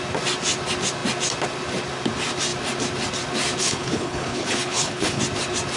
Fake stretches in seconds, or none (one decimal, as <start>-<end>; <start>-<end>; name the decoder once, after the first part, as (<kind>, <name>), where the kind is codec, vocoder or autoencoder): 3.6-5.2 (codec, HILCodec)